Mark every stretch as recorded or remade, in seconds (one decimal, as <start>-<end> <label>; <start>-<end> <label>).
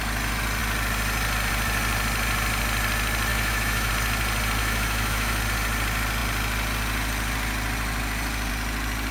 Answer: 0.0-3.3 recorded; 3.3-3.9 remade; 3.9-4.6 recorded; 4.6-5.4 remade; 5.4-9.1 recorded